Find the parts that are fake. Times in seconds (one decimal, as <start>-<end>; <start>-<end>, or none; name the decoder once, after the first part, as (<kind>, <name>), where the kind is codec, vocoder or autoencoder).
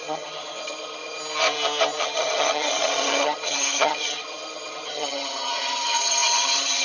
0.0-1.2 (vocoder, HiFi-GAN); 2.0-6.8